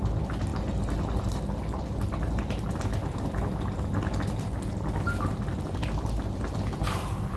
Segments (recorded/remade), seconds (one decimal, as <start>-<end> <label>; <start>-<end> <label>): 0.0-7.4 recorded